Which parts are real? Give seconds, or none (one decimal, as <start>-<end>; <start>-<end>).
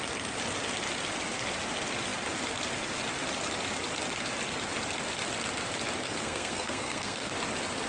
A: 0.0-6.0; 7.3-7.9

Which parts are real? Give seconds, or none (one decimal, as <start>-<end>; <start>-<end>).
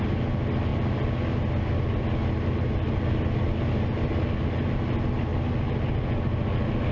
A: 0.0-6.9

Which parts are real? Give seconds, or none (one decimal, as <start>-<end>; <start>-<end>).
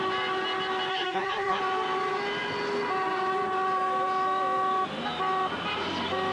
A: 0.0-0.9; 1.6-6.3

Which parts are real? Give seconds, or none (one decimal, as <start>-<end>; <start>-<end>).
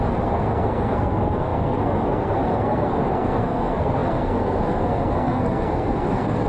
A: none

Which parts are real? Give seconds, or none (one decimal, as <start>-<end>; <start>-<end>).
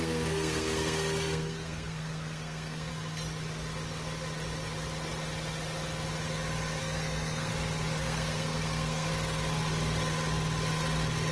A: 2.9-6.8; 7.5-8.0; 9.1-11.3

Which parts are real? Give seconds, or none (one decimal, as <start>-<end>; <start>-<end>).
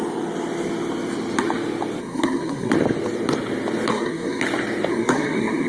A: 0.0-2.0; 2.7-3.9; 4.4-4.9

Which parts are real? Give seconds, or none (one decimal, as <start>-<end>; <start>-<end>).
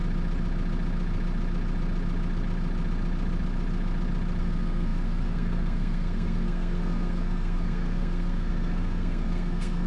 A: 0.0-4.4